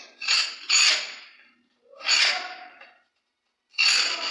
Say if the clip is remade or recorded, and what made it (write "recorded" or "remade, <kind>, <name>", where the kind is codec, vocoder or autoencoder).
recorded